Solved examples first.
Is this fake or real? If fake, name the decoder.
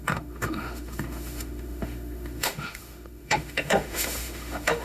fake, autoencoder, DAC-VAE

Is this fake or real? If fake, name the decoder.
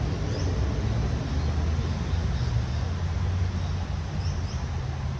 real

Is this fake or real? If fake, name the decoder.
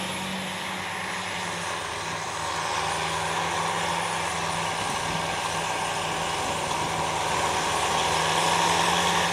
real